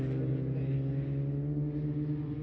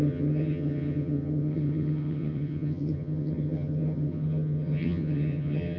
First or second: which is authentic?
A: first